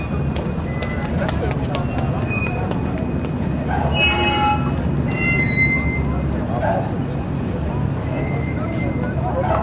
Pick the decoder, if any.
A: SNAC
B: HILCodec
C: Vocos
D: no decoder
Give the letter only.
D